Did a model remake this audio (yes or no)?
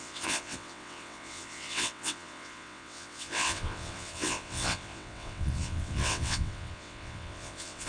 yes